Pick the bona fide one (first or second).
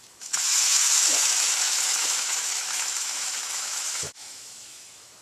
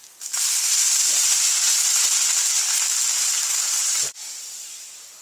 second